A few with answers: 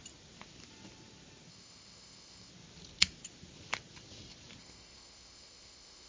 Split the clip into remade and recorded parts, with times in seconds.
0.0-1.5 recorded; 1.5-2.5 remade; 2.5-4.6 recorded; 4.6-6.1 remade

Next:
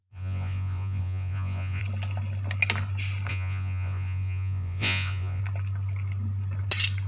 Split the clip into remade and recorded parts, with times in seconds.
0.0-1.8 remade; 1.8-3.3 recorded; 3.3-5.4 remade; 5.4-7.1 recorded

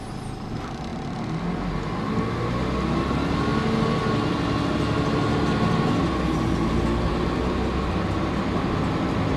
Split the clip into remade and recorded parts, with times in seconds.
0.0-9.4 recorded